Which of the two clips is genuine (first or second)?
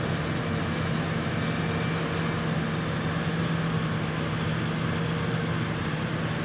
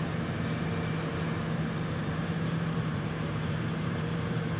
first